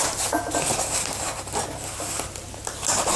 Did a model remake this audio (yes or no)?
no